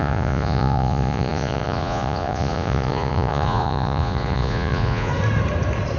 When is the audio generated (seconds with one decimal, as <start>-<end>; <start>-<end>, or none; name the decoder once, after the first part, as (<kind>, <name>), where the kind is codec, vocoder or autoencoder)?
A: 0.0-5.1 (vocoder, Vocos)